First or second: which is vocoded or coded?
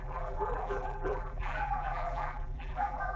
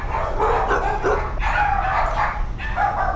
first